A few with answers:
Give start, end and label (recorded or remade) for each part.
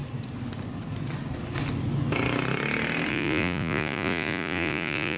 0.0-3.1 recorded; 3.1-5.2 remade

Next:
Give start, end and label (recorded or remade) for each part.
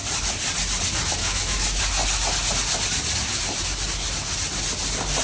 0.0-1.2 recorded; 1.2-1.8 remade; 1.8-5.2 recorded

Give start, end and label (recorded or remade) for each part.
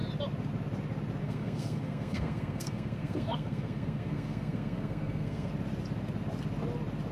0.0-1.2 recorded; 1.2-5.5 remade; 5.5-7.1 recorded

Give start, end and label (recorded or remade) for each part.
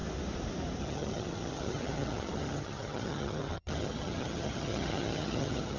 0.0-0.8 recorded; 0.8-5.8 remade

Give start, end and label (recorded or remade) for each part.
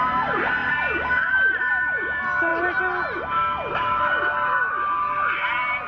0.0-5.9 recorded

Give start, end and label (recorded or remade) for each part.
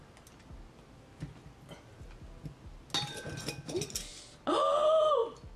0.0-5.6 recorded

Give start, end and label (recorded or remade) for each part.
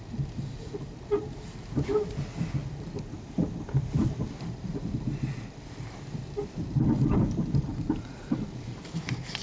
0.0-2.6 recorded; 2.6-6.8 remade; 6.8-7.7 recorded; 7.7-8.8 remade; 8.8-9.4 recorded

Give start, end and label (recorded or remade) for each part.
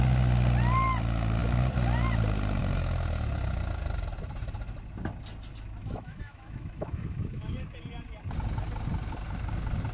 0.0-5.8 recorded; 5.8-7.6 remade; 7.6-9.9 recorded